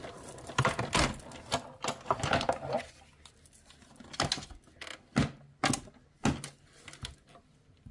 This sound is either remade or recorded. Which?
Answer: recorded